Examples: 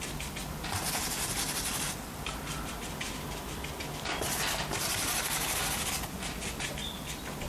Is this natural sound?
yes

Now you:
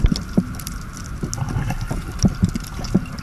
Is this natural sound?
yes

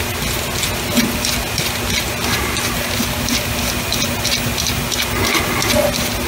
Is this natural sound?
yes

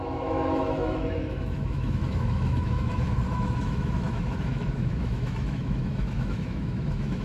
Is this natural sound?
no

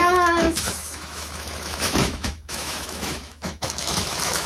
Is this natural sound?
no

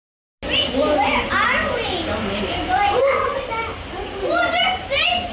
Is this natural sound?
yes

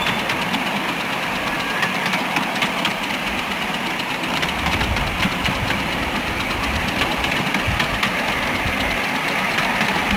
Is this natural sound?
yes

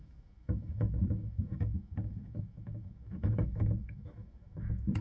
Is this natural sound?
no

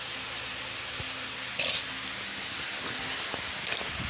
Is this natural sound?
yes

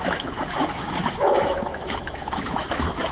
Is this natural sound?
no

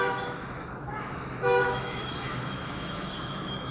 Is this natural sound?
no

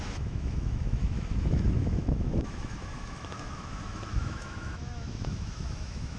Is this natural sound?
no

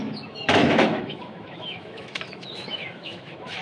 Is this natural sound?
no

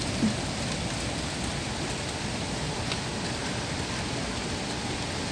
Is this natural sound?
yes